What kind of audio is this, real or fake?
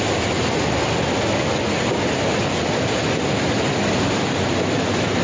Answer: real